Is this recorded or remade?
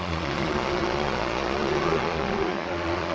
remade